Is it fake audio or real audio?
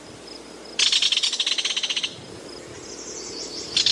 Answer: real